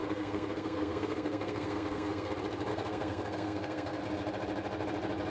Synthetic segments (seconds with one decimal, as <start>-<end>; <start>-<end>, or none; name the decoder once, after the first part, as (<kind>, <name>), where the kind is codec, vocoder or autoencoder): 0.0-2.3 (codec, SNAC); 2.7-4.0